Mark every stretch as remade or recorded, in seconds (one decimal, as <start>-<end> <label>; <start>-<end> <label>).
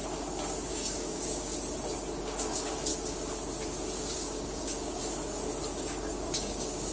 0.0-0.7 recorded; 0.7-1.5 remade; 1.5-2.2 recorded; 2.2-2.9 remade; 2.9-4.1 recorded; 4.1-5.0 remade; 5.0-5.8 recorded; 5.8-6.9 remade